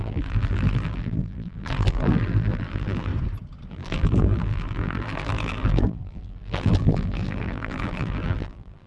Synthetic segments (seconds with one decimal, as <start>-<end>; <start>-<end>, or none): 0.0-3.1; 3.7-8.9